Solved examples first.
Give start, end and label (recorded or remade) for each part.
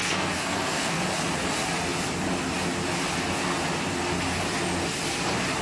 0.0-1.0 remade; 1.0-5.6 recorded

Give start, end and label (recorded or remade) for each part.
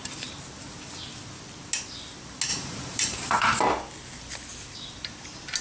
0.0-2.5 recorded; 2.5-3.6 remade; 3.6-5.6 recorded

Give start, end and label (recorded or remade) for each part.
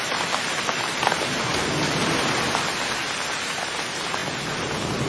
0.0-5.1 remade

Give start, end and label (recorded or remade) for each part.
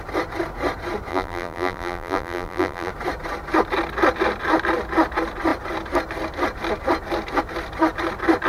0.0-1.1 recorded; 1.1-2.9 remade; 2.9-8.5 recorded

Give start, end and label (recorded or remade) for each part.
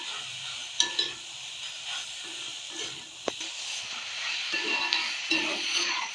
0.0-5.2 recorded; 5.2-6.1 remade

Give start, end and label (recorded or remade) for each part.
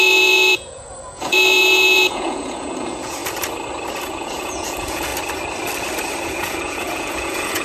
0.0-3.2 remade; 3.2-4.0 recorded; 4.0-5.1 remade; 5.1-6.2 recorded; 6.2-7.6 remade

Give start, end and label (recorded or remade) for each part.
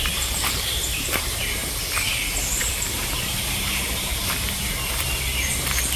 0.0-1.6 remade; 1.6-2.6 recorded; 2.6-4.1 remade; 4.1-6.0 recorded